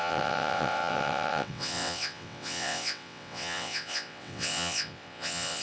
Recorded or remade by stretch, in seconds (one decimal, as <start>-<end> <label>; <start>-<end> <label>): 0.0-5.6 remade